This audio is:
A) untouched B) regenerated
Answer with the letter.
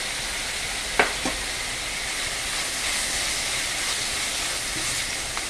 A